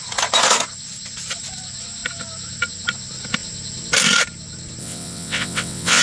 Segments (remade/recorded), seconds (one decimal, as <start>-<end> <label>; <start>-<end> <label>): 0.0-4.8 recorded; 4.8-6.0 remade